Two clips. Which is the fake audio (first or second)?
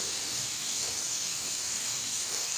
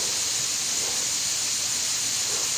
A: first